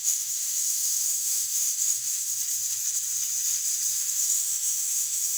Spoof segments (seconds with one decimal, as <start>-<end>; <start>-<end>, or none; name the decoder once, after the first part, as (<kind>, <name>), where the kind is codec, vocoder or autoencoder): 0.0-2.3 (autoencoder, DAC-VAE); 3.9-5.4

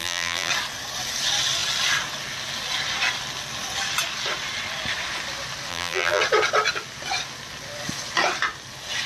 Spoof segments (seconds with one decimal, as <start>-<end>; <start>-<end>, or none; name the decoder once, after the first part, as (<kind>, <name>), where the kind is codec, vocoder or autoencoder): 0.0-0.5 (vocoder, BigVGAN v2); 5.7-6.2

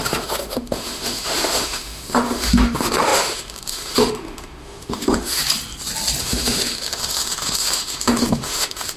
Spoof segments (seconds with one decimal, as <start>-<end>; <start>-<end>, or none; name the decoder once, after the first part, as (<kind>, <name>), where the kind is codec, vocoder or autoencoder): 0.0-5.4 (autoencoder, DAC-VAE); 6.2-9.0

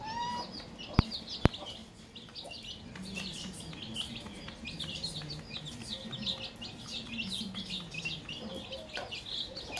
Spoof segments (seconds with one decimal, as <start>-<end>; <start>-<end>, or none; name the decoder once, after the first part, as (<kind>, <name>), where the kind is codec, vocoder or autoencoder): none

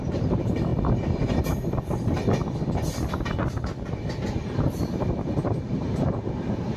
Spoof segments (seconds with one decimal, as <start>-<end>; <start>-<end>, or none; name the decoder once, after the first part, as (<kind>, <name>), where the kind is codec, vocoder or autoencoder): 0.0-0.7 (vocoder, BigVGAN v2); 4.8-6.8

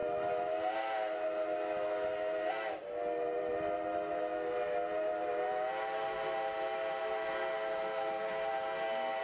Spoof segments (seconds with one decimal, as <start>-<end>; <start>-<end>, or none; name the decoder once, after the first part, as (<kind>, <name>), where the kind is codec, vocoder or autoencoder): none

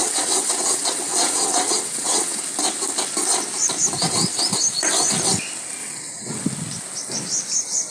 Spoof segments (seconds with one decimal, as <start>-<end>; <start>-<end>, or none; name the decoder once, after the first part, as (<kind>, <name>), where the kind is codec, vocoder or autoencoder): 0.0-2.4 (vocoder, WaveNeXt); 5.8-6.4